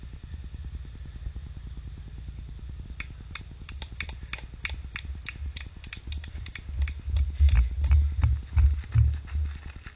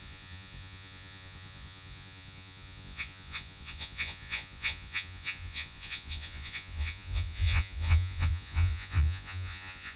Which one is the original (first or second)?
first